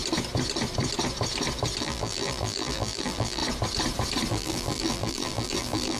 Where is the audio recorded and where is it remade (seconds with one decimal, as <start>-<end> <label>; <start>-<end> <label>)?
0.0-1.8 recorded; 1.8-3.4 remade; 3.4-4.3 recorded; 4.3-6.0 remade